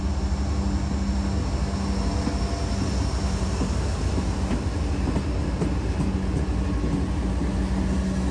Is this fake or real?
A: real